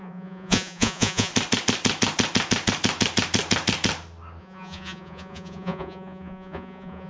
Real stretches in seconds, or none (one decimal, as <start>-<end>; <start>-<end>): 1.3-4.4